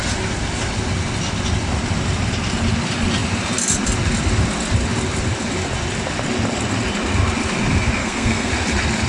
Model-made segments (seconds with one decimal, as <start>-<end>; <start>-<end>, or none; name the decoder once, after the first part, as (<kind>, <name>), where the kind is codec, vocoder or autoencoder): 8.0-8.5 (codec, SNAC)